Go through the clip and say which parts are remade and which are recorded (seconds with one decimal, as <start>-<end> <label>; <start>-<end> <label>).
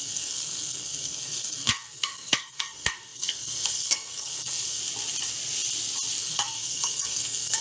0.0-4.8 remade; 4.8-6.2 recorded; 6.2-7.6 remade